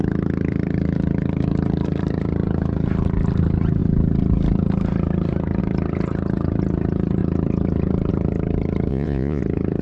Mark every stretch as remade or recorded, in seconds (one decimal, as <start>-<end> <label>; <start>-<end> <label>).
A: 0.0-8.9 recorded; 8.9-9.4 remade; 9.4-9.8 recorded